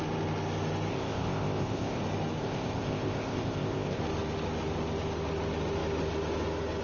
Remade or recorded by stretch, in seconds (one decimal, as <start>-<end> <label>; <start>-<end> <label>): 0.0-0.9 recorded; 0.9-2.0 remade; 2.0-2.4 recorded; 2.4-4.0 remade; 4.0-6.8 recorded